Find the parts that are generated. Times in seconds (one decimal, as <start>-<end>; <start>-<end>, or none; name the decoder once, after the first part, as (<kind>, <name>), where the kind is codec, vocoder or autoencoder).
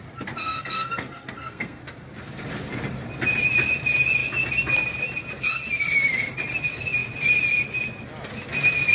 0.4-1.8 (codec, SNAC)